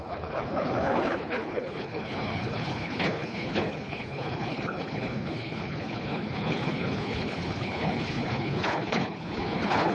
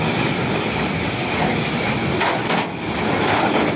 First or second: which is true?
second